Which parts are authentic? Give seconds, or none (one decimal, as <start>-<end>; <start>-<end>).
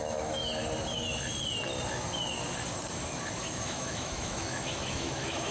0.4-3.4